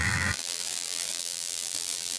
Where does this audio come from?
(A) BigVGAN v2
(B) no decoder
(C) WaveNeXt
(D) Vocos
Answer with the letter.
A